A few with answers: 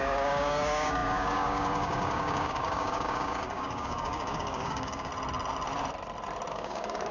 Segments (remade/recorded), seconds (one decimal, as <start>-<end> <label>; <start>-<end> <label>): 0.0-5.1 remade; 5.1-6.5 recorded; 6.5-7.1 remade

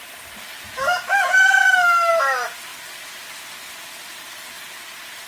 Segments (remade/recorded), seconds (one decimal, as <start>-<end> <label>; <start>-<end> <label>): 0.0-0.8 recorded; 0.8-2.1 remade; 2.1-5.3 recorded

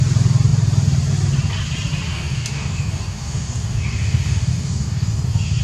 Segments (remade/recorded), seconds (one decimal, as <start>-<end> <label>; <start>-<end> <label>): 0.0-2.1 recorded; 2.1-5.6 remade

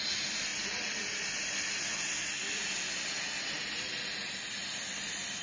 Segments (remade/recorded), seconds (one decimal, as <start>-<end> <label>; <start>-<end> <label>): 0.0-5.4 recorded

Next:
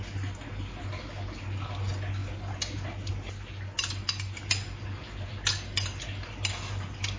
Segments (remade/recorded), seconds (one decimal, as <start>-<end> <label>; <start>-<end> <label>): 0.0-7.2 recorded

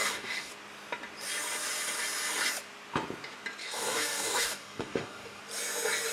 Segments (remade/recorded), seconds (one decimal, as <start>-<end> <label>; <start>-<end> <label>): 0.0-0.5 remade; 0.5-3.6 recorded; 3.6-5.4 remade; 5.4-6.1 recorded

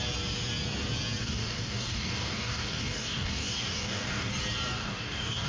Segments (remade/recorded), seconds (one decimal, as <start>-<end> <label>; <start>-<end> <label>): 0.0-1.2 recorded; 1.2-4.3 remade; 4.3-4.8 recorded; 4.8-5.5 remade

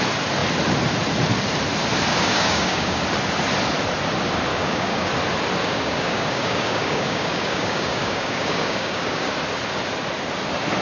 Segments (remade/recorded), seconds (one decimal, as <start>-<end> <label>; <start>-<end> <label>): 0.0-2.1 recorded; 2.1-3.0 remade; 3.0-4.5 recorded; 4.5-5.1 remade; 5.1-5.6 recorded; 5.6-9.3 remade; 9.3-10.8 recorded